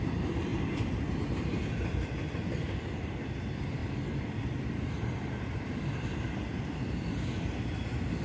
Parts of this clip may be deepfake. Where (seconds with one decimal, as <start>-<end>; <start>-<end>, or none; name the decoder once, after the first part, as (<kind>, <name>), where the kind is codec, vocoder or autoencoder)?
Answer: none